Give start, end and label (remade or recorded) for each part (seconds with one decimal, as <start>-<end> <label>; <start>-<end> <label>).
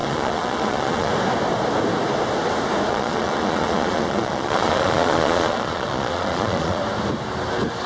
0.0-1.1 remade; 1.1-2.9 recorded; 2.9-6.8 remade; 6.8-7.9 recorded